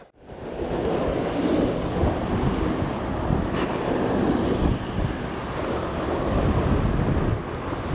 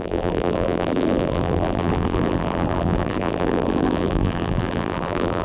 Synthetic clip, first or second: second